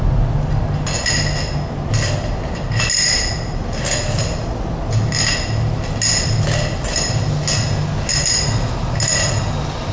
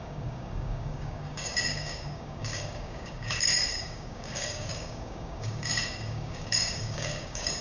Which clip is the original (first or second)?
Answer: first